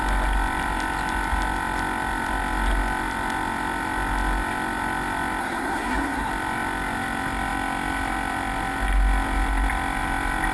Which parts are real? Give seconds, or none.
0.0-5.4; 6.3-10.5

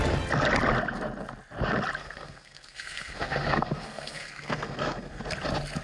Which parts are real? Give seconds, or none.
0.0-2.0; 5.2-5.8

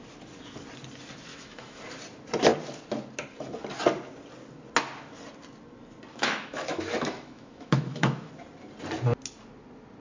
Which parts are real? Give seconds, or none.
0.0-1.3; 1.8-6.1; 8.3-10.0

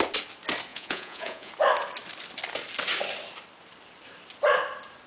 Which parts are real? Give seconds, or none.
0.0-0.7; 1.5-5.1

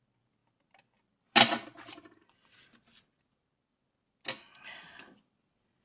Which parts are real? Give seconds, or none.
0.0-5.8